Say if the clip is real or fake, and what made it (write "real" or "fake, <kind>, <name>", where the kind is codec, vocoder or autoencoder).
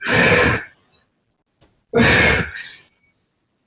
real